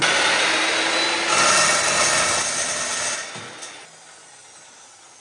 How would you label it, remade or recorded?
recorded